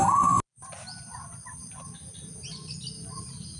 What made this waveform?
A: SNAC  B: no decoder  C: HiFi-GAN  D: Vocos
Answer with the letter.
B